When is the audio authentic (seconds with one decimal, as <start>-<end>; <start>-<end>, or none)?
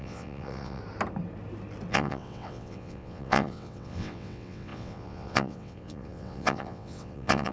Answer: 0.8-1.9